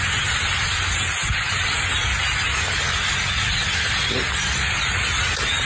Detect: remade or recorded recorded